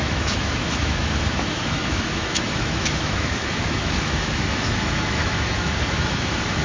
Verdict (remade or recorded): remade